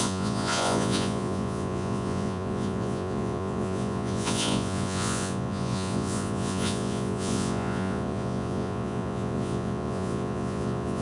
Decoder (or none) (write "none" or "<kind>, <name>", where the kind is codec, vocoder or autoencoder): vocoder, Vocos